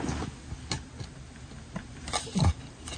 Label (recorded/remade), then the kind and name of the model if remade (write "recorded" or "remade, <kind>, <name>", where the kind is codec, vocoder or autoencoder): recorded